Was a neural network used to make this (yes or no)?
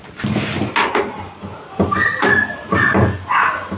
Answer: no